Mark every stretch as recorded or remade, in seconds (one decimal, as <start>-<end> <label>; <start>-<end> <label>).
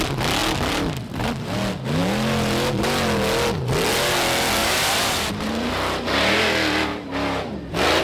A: 0.0-4.6 recorded; 4.6-5.7 remade; 5.7-8.0 recorded